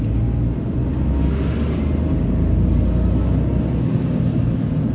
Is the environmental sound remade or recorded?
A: recorded